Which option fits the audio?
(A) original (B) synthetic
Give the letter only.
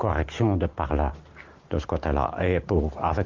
A